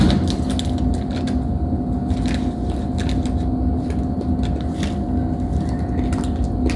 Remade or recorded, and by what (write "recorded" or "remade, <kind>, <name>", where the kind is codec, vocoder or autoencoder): recorded